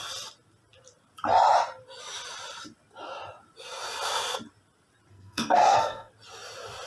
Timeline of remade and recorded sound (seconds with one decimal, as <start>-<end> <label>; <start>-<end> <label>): 0.0-5.1 recorded; 5.1-6.1 remade; 6.1-6.9 recorded